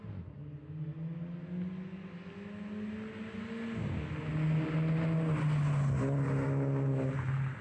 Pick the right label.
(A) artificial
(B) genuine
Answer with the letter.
B